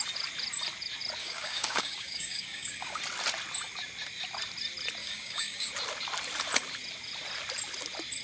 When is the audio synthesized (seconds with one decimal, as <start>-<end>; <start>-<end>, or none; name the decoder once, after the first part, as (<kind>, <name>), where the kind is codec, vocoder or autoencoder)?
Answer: 1.2-3.0 (codec, DAC); 5.0-5.7